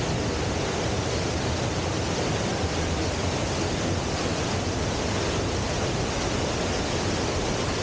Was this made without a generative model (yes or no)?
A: yes